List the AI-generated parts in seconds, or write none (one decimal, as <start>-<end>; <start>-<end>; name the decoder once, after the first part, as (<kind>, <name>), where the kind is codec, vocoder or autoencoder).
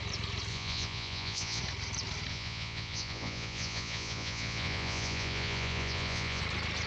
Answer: 0.5-1.6 (vocoder, Vocos); 2.3-6.4